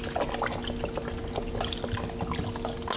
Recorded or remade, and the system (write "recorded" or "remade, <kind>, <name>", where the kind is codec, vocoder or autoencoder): recorded